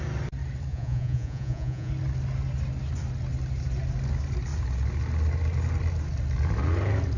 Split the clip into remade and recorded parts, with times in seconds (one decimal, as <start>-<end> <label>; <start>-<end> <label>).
0.0-0.7 recorded; 0.7-1.9 remade; 1.9-7.2 recorded